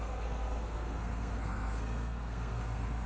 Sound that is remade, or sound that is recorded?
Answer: remade